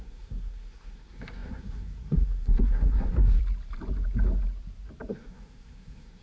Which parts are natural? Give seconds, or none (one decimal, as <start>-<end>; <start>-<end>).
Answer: 3.4-5.1